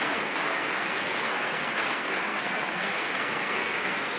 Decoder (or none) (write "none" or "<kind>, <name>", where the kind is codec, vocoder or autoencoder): codec, SNAC